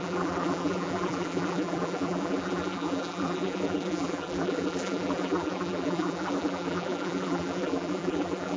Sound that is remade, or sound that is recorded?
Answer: remade